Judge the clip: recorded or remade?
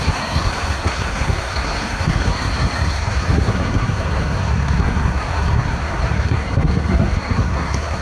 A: remade